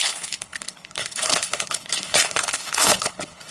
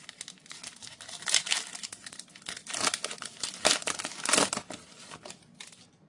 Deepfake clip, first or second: first